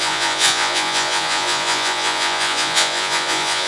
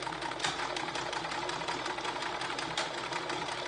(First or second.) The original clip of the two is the second